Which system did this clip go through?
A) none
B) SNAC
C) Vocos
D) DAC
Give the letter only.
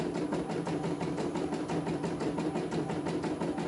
A